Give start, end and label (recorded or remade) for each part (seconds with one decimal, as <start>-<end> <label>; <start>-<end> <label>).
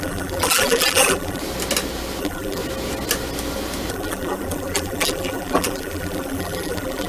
0.0-1.4 remade; 1.4-2.2 recorded; 2.2-2.6 remade; 2.6-3.9 recorded; 3.9-7.1 remade